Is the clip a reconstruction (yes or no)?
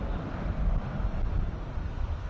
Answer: no